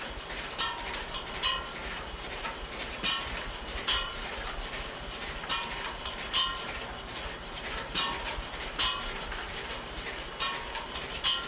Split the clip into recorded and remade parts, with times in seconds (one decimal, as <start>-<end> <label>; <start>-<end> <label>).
0.0-11.5 recorded

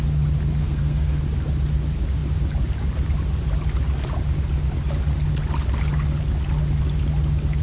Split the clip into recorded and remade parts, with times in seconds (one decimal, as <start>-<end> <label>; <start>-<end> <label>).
0.0-0.6 recorded; 0.6-1.2 remade; 1.2-7.6 recorded

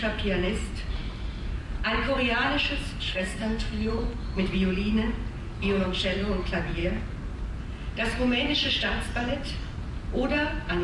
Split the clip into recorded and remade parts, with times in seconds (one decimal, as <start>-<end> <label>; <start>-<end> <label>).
0.0-3.1 recorded; 3.1-3.9 remade; 3.9-10.8 recorded

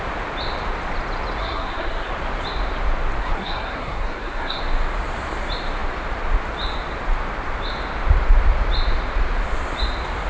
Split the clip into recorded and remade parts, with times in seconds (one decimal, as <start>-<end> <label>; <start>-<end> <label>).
0.0-1.4 recorded; 1.4-2.1 remade; 2.1-3.2 recorded; 3.2-4.6 remade; 4.6-10.3 recorded

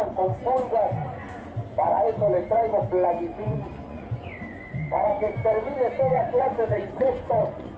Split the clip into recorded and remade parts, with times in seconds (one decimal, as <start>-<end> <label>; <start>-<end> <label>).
0.0-3.3 recorded; 3.3-5.3 remade; 5.3-6.1 recorded; 6.1-7.8 remade

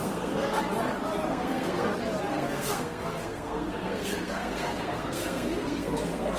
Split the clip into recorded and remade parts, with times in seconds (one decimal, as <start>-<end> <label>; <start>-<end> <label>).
0.0-0.6 remade; 0.6-1.3 recorded; 1.3-1.9 remade; 1.9-2.3 recorded; 2.3-6.4 remade

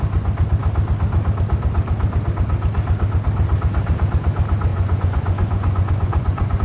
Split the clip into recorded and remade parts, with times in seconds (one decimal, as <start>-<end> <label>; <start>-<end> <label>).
0.0-4.7 recorded; 4.7-6.6 remade

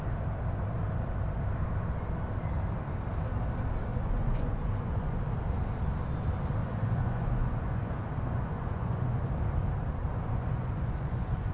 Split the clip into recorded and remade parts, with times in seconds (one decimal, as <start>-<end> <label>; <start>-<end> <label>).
0.0-3.9 recorded; 3.9-5.2 remade; 5.2-6.6 recorded; 6.6-9.3 remade; 9.3-10.1 recorded; 10.1-11.5 remade